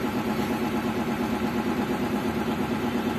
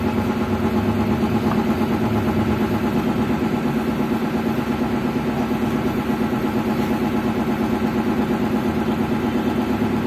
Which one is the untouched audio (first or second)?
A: second